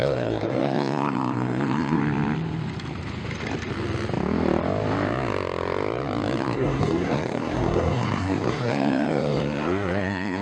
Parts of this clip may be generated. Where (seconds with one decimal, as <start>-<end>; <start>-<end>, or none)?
0.0-2.0; 6.4-10.4